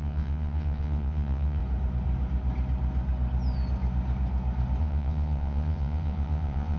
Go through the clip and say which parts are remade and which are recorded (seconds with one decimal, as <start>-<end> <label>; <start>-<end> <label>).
0.0-1.6 remade; 1.6-4.8 recorded; 4.8-6.8 remade